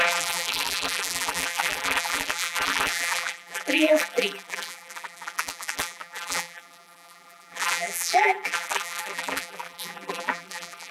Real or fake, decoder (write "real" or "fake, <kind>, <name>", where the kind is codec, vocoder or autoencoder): fake, vocoder, BigVGAN v2